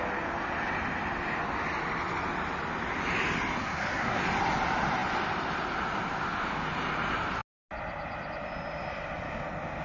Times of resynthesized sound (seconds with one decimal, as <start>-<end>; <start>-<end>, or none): 3.6-4.2